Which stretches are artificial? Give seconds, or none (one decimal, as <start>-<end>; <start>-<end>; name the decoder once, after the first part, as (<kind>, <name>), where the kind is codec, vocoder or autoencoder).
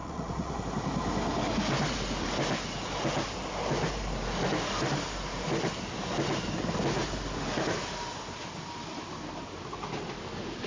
0.0-0.6 (vocoder, Vocos)